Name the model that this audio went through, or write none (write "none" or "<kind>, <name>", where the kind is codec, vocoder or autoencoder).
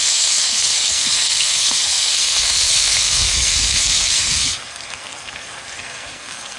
codec, SNAC